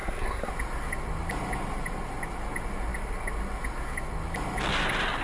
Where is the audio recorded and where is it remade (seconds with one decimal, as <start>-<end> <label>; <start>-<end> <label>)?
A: 0.0-0.5 remade; 0.5-5.2 recorded